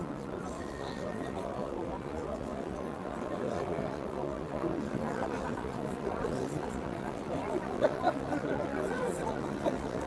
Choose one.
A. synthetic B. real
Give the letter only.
A